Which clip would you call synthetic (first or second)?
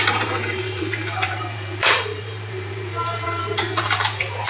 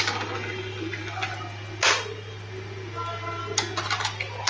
first